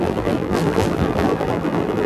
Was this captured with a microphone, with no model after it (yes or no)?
no